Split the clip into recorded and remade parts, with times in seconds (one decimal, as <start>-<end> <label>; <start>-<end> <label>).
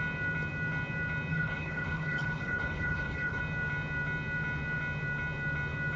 0.0-1.3 recorded; 1.3-3.4 remade; 3.4-6.0 recorded